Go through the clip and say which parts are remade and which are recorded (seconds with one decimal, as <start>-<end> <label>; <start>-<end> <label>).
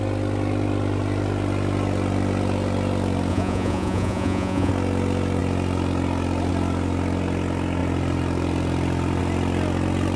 0.0-3.3 recorded; 3.3-4.7 remade; 4.7-10.2 recorded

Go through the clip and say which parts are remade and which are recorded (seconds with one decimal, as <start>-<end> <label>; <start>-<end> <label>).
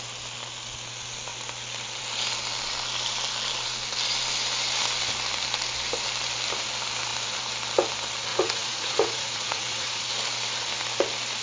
0.0-8.3 recorded; 8.3-10.0 remade; 10.0-11.4 recorded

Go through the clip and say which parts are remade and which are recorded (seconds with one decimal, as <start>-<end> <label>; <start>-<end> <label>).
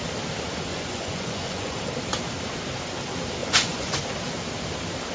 0.0-0.7 recorded; 0.7-1.8 remade; 1.8-3.4 recorded; 3.4-4.0 remade; 4.0-5.1 recorded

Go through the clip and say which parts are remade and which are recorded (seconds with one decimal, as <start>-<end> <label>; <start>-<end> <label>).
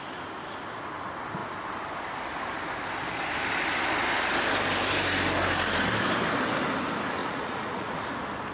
0.0-7.2 recorded; 7.2-8.1 remade; 8.1-8.5 recorded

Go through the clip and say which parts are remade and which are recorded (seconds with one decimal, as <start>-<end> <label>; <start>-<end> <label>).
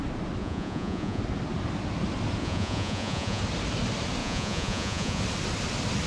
0.0-0.4 recorded; 0.4-1.2 remade; 1.2-2.4 recorded; 2.4-3.4 remade; 3.4-4.2 recorded; 4.2-5.2 remade; 5.2-6.1 recorded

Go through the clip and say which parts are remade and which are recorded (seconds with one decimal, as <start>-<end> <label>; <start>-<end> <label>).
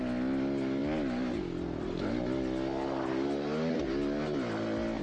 0.0-5.0 recorded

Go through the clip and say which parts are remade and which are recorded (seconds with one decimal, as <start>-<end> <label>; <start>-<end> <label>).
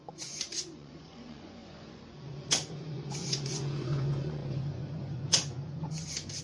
0.0-6.4 remade